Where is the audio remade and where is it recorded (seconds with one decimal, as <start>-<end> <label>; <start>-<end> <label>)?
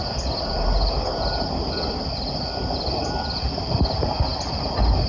0.0-5.1 recorded